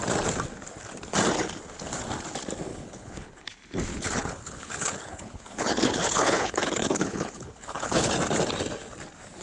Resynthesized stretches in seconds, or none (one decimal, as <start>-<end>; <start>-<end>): 2.7-3.5; 3.9-8.1